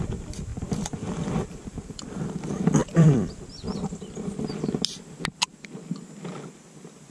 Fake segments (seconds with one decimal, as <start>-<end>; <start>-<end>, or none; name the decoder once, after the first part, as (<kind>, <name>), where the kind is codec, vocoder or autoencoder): 0.5-2.2 (vocoder, BigVGAN v2); 2.8-4.5; 5.5-6.0